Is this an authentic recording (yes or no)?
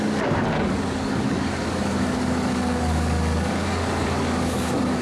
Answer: no